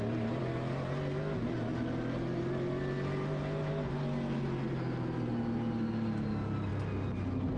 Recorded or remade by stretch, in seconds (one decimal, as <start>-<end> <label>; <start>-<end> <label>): 0.0-7.6 recorded